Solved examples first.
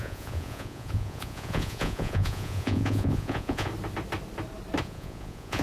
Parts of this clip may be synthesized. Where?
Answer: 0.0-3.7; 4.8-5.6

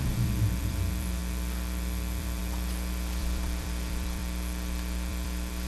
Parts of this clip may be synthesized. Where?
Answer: 0.0-4.2; 5.1-5.7

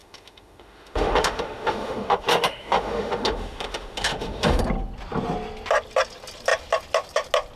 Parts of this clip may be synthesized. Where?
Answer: 0.0-4.6

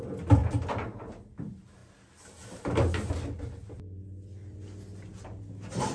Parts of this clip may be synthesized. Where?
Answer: none